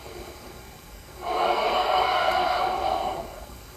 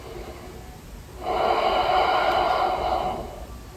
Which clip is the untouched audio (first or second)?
second